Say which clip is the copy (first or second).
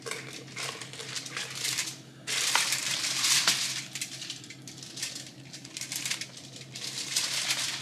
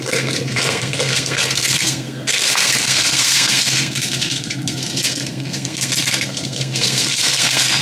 second